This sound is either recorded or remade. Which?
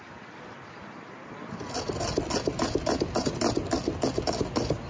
recorded